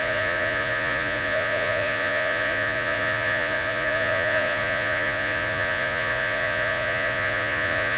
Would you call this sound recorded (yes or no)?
no